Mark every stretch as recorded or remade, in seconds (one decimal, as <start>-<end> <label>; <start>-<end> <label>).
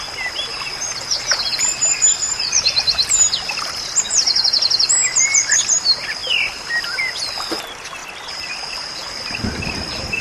0.0-6.2 recorded; 6.2-7.0 remade; 7.0-8.0 recorded; 8.0-10.2 remade